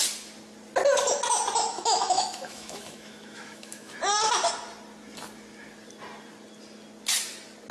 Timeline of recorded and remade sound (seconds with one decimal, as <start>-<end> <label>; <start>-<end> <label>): 0.0-1.7 recorded; 1.7-3.9 remade; 3.9-7.7 recorded